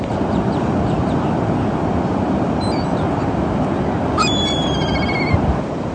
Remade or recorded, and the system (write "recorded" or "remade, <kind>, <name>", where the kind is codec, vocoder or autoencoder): remade, vocoder, BigVGAN v2